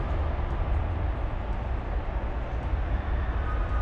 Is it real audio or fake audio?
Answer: real